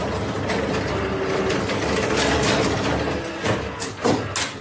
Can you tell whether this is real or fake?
real